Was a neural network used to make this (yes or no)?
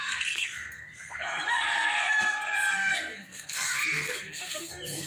yes